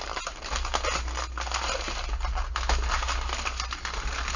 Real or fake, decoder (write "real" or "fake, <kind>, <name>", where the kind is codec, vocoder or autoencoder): real